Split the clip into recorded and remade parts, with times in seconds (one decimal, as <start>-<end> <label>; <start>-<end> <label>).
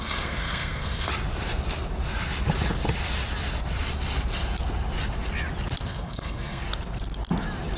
0.0-1.1 remade; 1.1-5.8 recorded; 5.8-6.6 remade; 6.6-7.8 recorded